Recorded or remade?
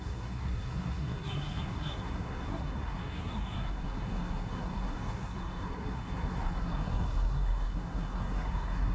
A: remade